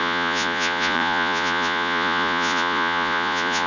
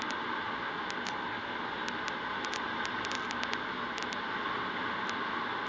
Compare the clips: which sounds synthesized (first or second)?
first